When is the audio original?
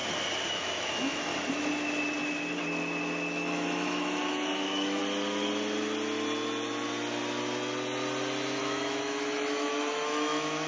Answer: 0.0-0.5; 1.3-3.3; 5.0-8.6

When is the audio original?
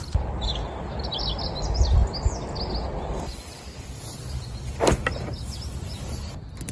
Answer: 0.0-6.7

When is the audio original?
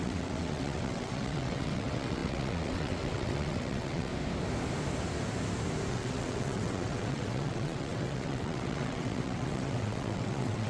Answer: 4.1-5.9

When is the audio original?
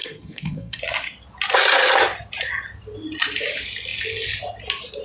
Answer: 0.8-5.0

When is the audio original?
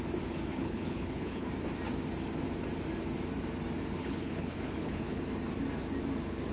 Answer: 0.0-0.5; 1.5-4.0; 5.2-6.5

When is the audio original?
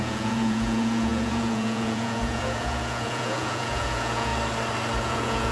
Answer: 4.3-5.0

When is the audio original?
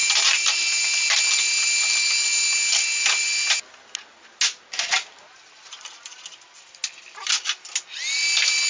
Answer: 0.0-8.7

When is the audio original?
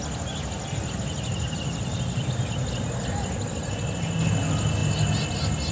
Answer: 0.0-5.7